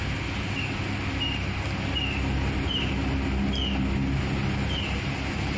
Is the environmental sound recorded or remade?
recorded